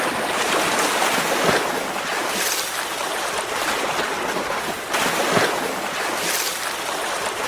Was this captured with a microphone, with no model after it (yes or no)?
no